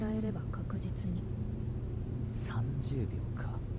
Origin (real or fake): fake